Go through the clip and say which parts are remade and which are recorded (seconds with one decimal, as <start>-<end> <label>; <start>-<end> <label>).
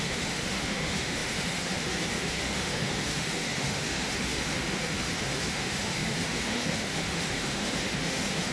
0.0-8.5 remade